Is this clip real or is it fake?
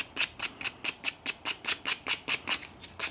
real